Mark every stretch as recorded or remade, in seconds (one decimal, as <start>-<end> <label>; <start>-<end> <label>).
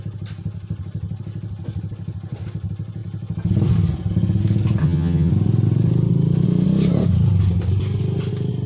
0.0-4.8 recorded; 4.8-5.3 remade; 5.3-8.7 recorded